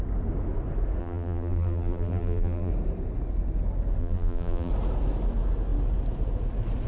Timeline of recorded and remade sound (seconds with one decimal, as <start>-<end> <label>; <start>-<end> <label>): 0.0-1.0 recorded; 1.0-2.7 remade; 2.7-4.0 recorded; 4.0-4.7 remade; 4.7-6.9 recorded